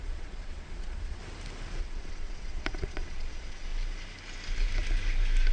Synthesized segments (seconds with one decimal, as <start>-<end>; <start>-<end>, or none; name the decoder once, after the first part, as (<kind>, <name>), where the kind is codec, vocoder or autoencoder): 0.0-1.2 (vocoder, Vocos); 1.8-3.7